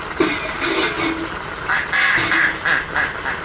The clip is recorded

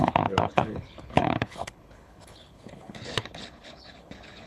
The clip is remade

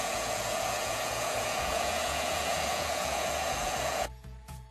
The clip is remade